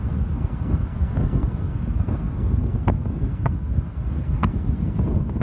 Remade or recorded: remade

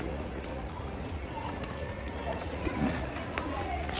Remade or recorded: remade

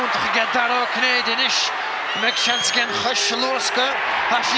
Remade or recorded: recorded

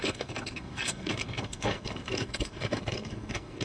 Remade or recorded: remade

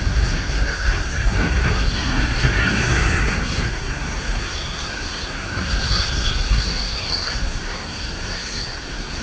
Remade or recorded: remade